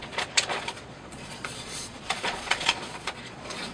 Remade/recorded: remade